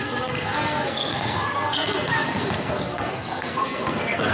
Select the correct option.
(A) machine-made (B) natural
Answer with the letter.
A